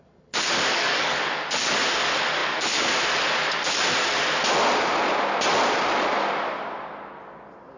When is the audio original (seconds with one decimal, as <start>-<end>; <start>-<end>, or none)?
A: 0.0-0.7; 1.2-7.8